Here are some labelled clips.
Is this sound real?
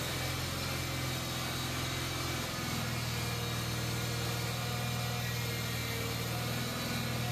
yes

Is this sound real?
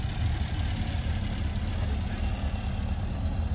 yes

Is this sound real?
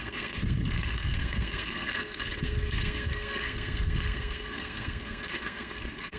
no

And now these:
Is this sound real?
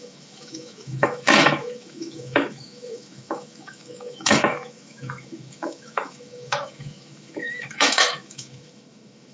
no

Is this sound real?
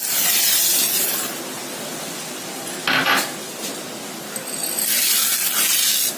yes